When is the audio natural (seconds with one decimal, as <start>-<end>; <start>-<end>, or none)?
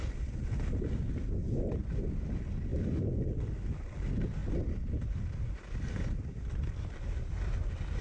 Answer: 0.0-8.0